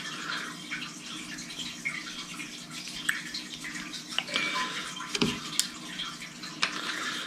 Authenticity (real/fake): real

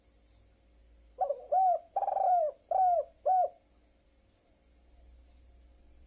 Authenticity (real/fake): real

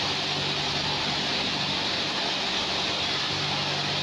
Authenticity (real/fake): real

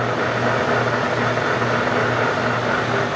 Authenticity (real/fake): real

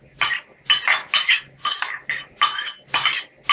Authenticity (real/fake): real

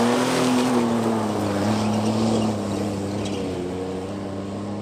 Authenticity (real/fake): real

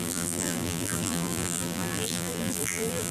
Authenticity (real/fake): fake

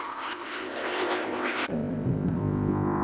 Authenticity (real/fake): fake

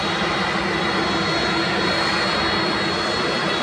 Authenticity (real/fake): real